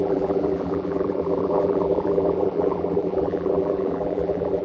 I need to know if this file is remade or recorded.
remade